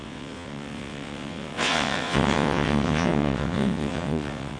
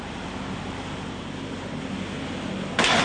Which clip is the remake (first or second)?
first